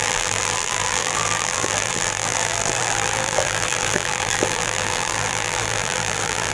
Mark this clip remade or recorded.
remade